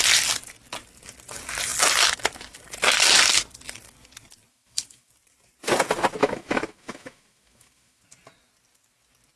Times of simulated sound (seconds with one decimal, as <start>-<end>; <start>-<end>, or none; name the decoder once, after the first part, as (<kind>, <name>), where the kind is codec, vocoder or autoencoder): 4.5-5.1 (autoencoder, DAC-VAE); 6.2-8.0